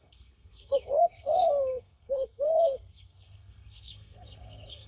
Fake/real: fake